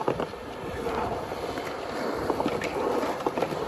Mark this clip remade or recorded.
remade